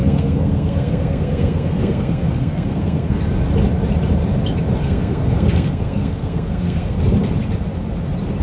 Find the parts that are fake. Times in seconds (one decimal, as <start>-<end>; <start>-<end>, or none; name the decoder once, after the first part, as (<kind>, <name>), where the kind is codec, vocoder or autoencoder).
0.0-3.2 (codec, SNAC); 4.8-7.0